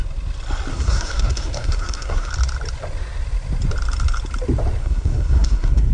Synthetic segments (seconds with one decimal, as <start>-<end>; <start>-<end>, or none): 0.7-2.3; 4.8-5.9